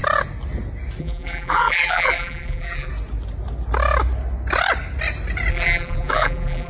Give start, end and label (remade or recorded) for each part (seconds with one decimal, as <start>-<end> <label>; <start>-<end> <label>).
0.0-1.0 recorded; 1.0-2.9 remade; 2.9-5.5 recorded; 5.5-6.7 remade